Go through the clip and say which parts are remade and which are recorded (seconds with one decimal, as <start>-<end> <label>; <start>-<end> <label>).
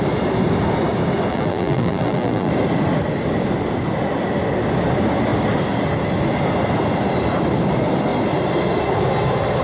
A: 0.0-1.3 recorded; 1.3-2.5 remade; 2.5-9.6 recorded